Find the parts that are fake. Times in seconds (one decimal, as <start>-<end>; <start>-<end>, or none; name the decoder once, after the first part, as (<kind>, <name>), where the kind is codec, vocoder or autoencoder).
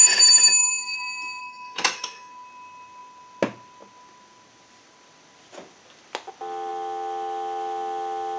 0.0-1.0 (autoencoder, DAC-VAE); 1.4-2.3